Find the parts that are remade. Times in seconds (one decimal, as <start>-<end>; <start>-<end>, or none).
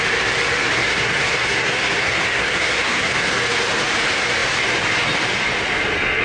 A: 0.8-3.4